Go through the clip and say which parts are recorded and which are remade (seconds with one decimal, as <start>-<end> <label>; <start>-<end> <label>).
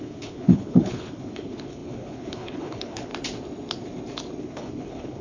0.0-3.1 remade; 3.1-4.4 recorded; 4.4-5.2 remade